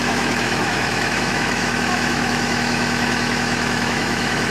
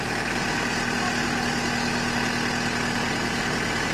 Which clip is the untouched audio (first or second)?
second